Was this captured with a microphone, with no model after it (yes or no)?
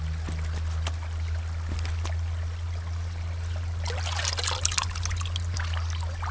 yes